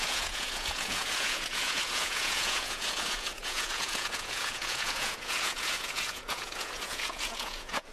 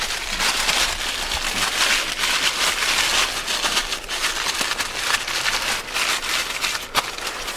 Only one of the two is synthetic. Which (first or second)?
first